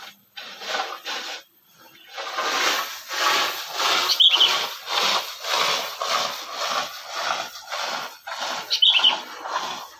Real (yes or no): yes